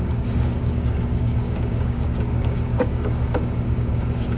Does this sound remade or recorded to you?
remade